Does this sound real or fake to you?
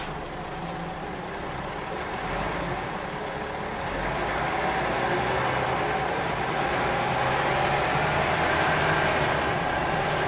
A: real